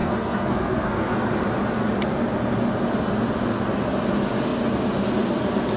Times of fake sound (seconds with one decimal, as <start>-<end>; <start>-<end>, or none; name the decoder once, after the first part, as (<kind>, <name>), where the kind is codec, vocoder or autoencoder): 0.0-1.1 (codec, SNAC)